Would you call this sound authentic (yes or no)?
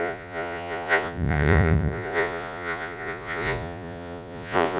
no